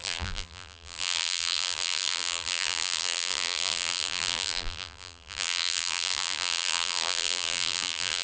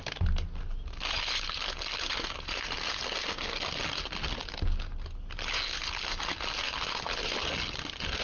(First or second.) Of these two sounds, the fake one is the first